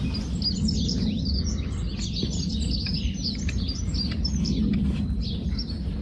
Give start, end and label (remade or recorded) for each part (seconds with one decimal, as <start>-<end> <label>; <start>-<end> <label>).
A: 0.0-6.0 recorded